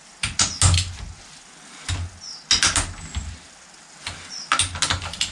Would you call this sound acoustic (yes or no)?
yes